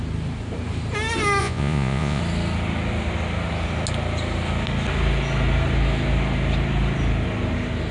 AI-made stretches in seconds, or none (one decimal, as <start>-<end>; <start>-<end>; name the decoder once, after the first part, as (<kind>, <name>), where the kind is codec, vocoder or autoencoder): 1.4-2.2 (vocoder, Vocos)